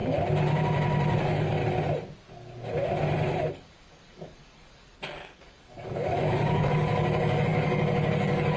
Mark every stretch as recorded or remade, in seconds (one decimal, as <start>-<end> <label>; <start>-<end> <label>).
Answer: 0.0-1.2 recorded; 1.2-1.6 remade; 1.6-3.5 recorded; 3.5-8.6 remade